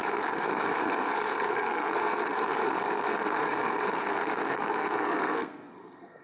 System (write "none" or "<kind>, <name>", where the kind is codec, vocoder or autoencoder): codec, SNAC